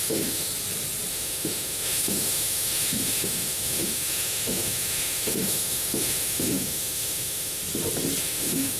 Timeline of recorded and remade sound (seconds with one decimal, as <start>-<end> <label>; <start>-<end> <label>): 0.0-0.5 remade; 0.5-1.1 recorded; 1.1-7.6 remade; 7.6-8.2 recorded; 8.2-8.8 remade